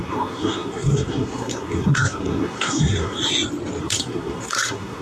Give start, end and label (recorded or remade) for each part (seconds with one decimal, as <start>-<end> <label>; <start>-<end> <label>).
0.0-3.2 remade; 3.2-3.8 recorded; 3.8-5.0 remade